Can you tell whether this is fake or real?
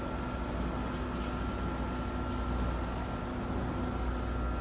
real